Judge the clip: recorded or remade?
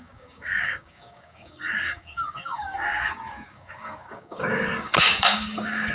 remade